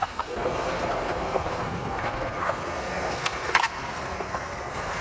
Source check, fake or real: fake